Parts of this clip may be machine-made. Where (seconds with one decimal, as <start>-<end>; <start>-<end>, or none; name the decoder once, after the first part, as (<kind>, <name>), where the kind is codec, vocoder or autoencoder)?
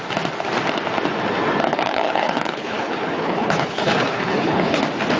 1.7-4.8 (codec, HILCodec)